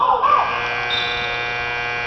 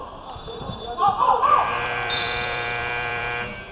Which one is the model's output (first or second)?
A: second